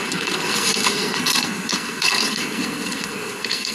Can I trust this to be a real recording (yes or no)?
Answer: no